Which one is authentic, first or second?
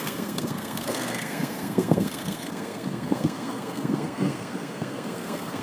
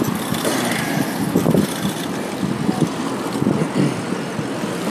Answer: second